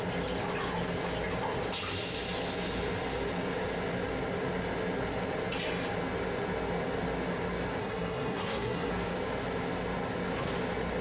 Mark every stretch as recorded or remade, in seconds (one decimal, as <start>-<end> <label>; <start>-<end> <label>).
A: 0.0-7.8 recorded; 7.8-8.9 remade; 8.9-11.0 recorded